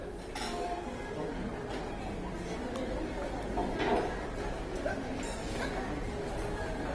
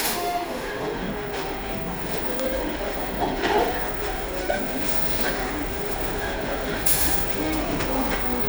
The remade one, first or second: second